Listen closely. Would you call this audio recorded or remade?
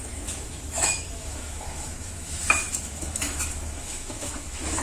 remade